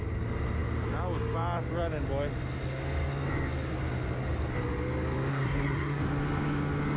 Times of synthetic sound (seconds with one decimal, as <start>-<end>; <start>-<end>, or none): 5.3-6.0